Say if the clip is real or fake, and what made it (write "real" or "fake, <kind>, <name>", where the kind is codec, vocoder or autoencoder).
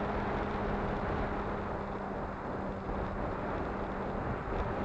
real